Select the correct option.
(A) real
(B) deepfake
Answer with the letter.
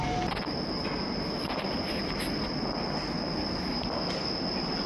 A